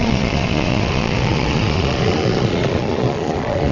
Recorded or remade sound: remade